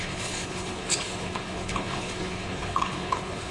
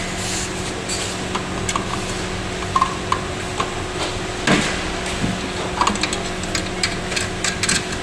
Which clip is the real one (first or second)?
second